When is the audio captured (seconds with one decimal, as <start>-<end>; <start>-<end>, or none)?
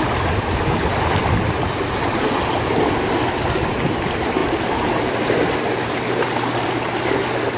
0.0-7.6